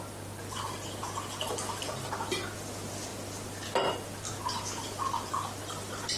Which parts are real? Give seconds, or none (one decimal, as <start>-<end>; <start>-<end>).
0.0-6.2